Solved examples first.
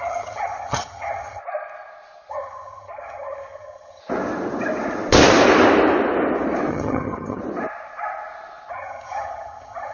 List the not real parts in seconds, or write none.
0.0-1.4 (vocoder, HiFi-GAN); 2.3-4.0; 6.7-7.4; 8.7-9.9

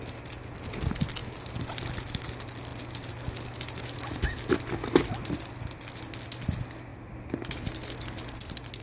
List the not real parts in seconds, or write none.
none

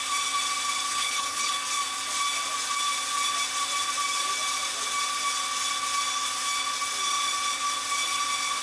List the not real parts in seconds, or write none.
0.9-1.5 (codec, HILCodec)